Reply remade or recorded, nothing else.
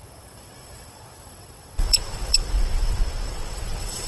remade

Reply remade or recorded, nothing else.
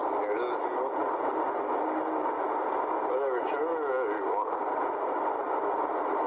recorded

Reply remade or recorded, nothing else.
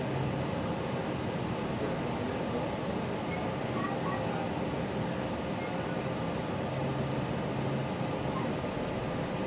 recorded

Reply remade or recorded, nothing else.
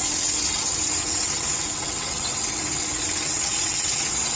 remade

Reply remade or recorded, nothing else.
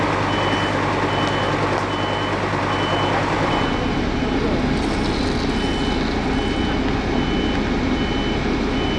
recorded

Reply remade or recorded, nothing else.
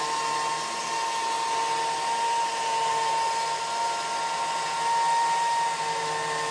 recorded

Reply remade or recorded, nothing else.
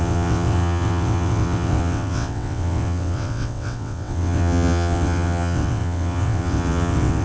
remade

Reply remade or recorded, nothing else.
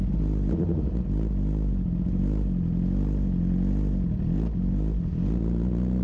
recorded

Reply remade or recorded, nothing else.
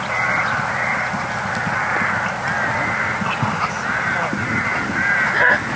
recorded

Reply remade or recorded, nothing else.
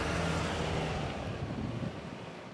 recorded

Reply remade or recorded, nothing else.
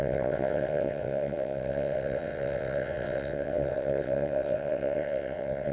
remade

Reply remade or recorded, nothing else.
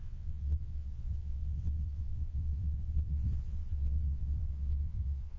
remade